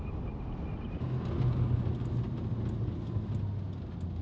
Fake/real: real